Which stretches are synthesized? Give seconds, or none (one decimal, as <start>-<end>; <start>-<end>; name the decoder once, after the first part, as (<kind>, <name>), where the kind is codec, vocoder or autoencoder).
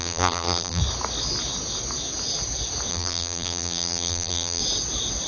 0.0-0.8 (vocoder, BigVGAN v2); 2.9-4.6